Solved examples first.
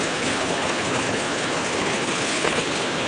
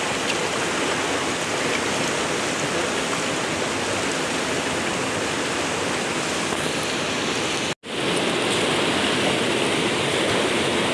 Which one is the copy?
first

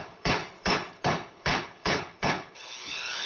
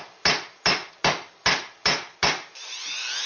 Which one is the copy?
first